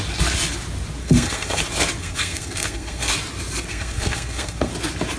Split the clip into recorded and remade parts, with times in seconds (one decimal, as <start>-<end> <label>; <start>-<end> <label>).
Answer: 0.0-1.0 recorded; 1.0-1.6 remade; 1.6-2.0 recorded; 2.0-3.1 remade; 3.1-3.7 recorded; 3.7-4.7 remade; 4.7-5.2 recorded